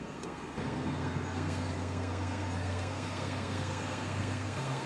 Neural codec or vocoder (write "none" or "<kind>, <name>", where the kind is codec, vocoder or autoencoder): codec, SNAC